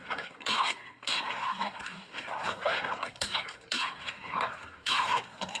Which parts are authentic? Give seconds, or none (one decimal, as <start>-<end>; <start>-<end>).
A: none